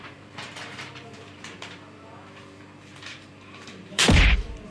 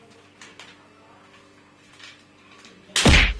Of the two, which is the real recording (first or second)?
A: second